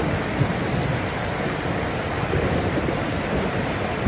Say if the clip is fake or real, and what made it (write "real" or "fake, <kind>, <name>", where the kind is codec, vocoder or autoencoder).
real